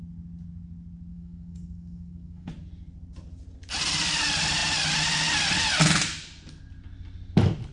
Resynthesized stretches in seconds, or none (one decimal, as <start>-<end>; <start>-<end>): 1.1-2.5